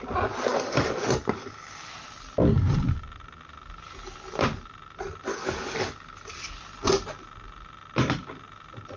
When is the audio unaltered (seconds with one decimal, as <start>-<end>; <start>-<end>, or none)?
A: 0.0-0.5; 1.9-5.3; 6.4-9.0

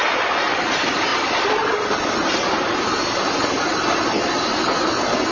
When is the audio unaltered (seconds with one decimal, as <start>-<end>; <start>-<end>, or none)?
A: 0.0-5.3

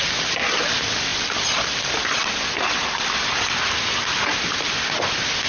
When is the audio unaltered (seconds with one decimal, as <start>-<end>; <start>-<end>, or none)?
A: 0.0-5.5